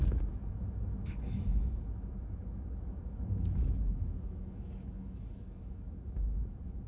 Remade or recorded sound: remade